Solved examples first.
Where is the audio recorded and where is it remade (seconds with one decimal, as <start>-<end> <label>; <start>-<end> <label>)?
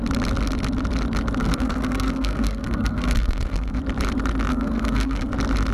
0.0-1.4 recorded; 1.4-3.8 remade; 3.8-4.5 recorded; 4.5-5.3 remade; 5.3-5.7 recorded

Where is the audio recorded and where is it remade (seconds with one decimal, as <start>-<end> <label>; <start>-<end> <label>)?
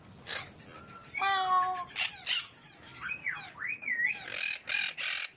0.0-5.4 recorded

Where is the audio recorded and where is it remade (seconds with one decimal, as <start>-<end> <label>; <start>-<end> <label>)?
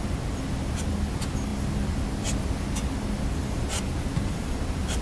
0.0-5.0 recorded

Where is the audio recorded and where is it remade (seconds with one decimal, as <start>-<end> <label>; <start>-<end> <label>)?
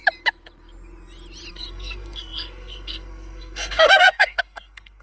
0.0-1.5 recorded; 1.5-5.0 remade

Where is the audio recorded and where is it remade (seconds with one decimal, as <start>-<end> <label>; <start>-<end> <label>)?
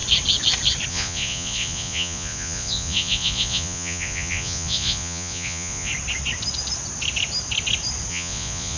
0.0-0.9 recorded; 0.9-5.9 remade; 5.9-8.1 recorded; 8.1-8.8 remade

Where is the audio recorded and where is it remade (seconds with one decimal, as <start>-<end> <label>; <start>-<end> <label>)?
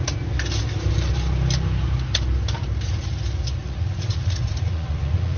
0.0-3.6 recorded; 3.6-5.4 remade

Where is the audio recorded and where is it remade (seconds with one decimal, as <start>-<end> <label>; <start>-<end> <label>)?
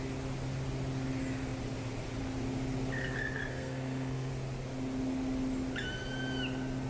0.0-3.5 recorded; 3.5-4.3 remade; 4.3-6.9 recorded